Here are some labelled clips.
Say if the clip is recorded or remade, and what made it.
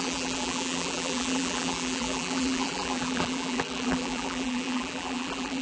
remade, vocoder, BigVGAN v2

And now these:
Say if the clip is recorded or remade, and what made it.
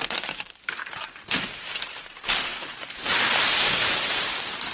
remade, vocoder, BigVGAN v2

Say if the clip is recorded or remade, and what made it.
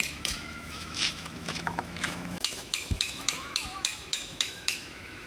remade, autoencoder, DAC-VAE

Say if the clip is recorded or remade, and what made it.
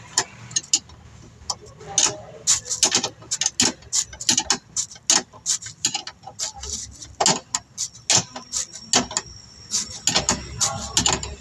recorded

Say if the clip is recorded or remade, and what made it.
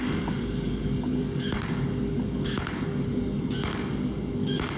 remade, codec, DAC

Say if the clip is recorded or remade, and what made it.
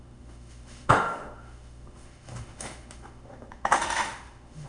remade, autoencoder, DAC-VAE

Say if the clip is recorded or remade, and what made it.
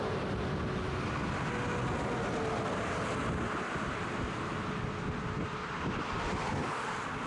recorded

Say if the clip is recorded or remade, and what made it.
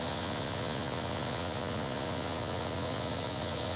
remade, vocoder, Vocos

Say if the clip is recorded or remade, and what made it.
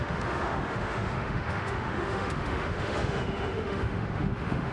remade, autoencoder, DAC-VAE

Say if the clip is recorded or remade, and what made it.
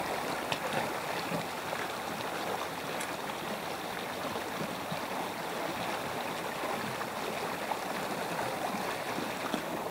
recorded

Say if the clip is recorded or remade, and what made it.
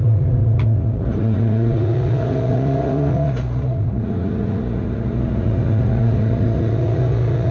remade, vocoder, Vocos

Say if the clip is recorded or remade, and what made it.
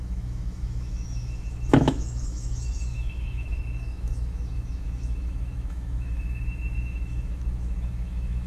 remade, autoencoder, DAC-VAE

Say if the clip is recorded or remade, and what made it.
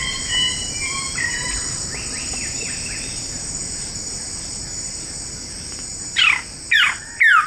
remade, vocoder, BigVGAN v2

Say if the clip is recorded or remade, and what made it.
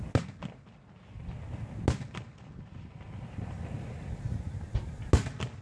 recorded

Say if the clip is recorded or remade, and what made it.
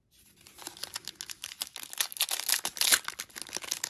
recorded